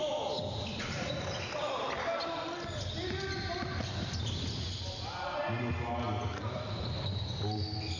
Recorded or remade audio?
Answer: recorded